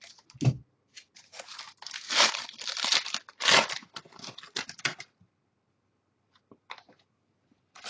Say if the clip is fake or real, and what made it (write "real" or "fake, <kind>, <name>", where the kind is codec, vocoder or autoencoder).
real